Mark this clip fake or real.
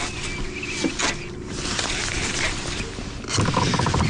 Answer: real